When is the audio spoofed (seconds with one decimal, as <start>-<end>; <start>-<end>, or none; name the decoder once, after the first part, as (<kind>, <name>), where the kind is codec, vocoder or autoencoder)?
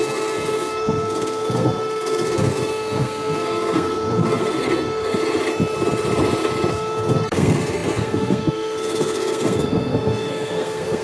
0.0-5.1 (codec, SNAC); 6.7-11.0